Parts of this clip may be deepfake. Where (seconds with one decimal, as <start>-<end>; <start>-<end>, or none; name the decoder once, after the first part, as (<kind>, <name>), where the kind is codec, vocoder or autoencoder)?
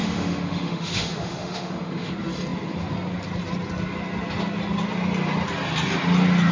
0.0-2.1 (autoencoder, DAC-VAE)